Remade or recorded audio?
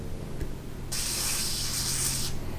recorded